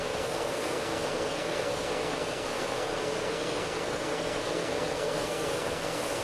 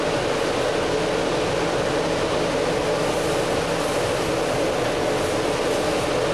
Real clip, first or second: second